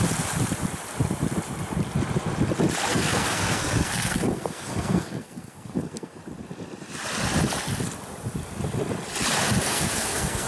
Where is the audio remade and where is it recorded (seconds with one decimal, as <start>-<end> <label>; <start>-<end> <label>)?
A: 0.0-2.9 recorded; 2.9-6.2 remade; 6.2-9.6 recorded; 9.6-10.5 remade